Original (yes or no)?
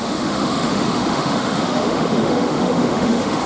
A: no